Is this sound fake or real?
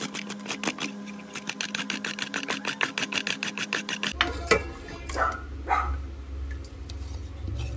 real